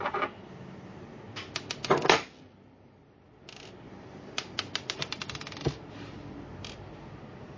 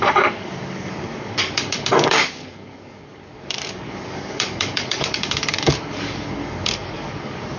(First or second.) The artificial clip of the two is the second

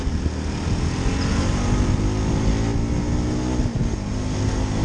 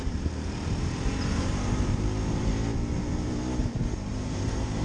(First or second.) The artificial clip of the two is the second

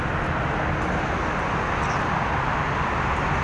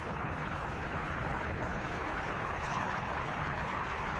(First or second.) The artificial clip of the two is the second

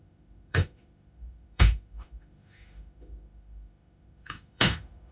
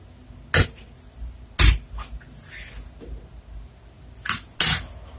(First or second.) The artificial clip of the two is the first